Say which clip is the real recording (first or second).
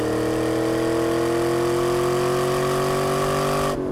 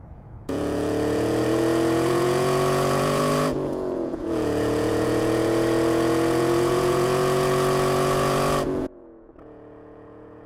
first